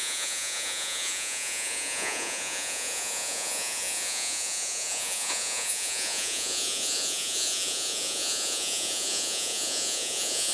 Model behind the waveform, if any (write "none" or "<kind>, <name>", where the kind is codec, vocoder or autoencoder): vocoder, Vocos